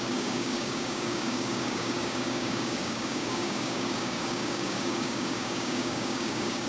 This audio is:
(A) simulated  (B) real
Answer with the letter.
A